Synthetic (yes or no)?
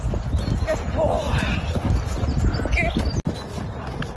no